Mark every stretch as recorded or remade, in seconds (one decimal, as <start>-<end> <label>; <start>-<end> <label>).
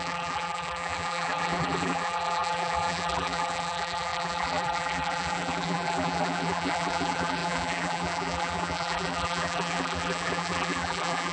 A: 0.0-11.3 remade